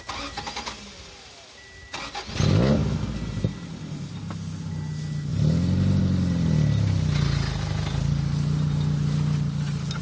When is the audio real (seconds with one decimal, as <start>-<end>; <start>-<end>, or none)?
0.0-10.0